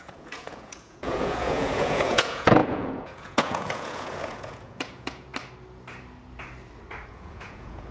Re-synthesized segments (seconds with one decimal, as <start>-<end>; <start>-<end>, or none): 0.0-5.3; 7.1-7.9